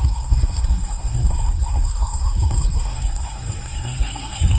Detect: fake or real fake